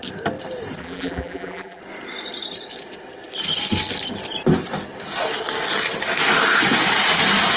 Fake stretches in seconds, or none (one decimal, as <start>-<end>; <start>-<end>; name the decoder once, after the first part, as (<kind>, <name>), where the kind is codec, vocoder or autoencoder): 0.8-1.8 (vocoder, BigVGAN v2)